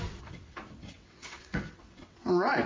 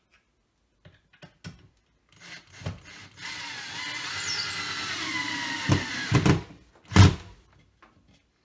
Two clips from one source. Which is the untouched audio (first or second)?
second